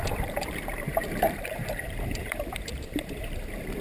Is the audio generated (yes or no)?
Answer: yes